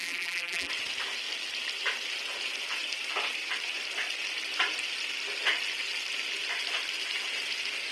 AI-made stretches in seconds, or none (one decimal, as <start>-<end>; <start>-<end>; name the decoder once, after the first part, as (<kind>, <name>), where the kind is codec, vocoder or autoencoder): 0.0-0.7 (vocoder, BigVGAN v2)